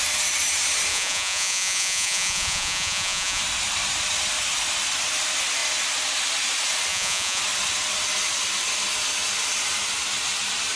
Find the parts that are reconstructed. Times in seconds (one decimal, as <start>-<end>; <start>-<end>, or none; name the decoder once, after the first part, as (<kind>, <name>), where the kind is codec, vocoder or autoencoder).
0.9-3.4 (vocoder, Vocos); 6.9-7.4

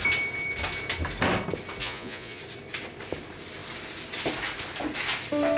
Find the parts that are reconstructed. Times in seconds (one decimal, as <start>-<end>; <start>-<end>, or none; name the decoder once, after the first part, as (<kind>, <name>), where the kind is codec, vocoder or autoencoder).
1.8-2.4 (vocoder, Vocos)

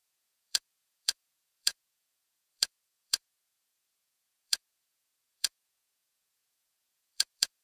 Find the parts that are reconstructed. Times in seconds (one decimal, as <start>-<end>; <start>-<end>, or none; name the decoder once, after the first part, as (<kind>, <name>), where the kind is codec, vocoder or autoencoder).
0.0-7.6 (vocoder, Vocos)

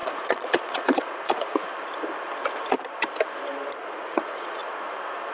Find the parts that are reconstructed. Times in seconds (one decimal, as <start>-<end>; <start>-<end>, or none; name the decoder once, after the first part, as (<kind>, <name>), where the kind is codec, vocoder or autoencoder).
0.0-1.7 (vocoder, Vocos); 3.8-4.6

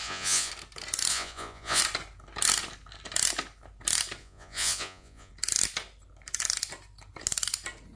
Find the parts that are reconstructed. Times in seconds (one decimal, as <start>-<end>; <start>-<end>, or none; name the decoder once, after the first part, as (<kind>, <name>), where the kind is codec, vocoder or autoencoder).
0.0-0.5 (vocoder, Vocos); 1.1-1.8; 4.2-5.3

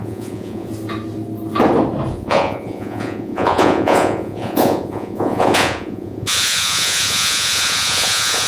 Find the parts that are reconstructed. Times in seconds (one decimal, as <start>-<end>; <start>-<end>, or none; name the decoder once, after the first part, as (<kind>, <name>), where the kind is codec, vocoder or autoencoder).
0.0-0.7 (vocoder, Vocos); 2.1-8.5

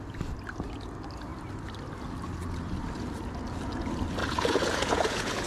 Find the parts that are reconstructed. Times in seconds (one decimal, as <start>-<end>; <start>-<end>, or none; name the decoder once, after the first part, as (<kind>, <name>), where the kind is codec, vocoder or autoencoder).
4.2-5.5 (vocoder, Vocos)